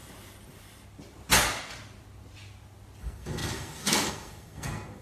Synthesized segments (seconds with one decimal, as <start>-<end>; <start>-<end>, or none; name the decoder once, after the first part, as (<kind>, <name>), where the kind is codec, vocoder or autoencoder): 3.0-5.0 (codec, SNAC)

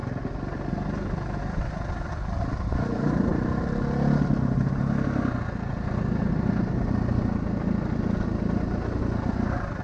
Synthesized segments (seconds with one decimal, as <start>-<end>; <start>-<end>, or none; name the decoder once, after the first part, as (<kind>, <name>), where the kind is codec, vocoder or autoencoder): none

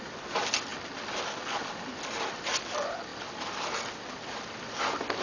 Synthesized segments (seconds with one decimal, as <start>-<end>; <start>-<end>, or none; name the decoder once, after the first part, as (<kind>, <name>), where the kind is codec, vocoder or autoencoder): none

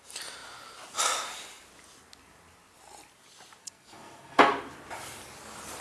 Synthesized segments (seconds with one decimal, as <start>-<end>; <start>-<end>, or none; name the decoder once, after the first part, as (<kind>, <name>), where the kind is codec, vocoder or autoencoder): 3.6-4.5 (codec, SNAC)

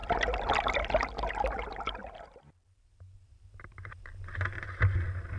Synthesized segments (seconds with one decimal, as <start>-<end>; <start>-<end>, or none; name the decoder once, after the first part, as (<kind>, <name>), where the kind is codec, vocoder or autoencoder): none

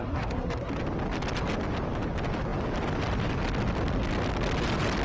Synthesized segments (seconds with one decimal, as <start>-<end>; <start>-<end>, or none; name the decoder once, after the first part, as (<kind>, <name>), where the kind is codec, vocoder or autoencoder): 0.0-0.7 (codec, SNAC)